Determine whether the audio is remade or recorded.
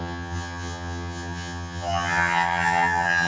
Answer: remade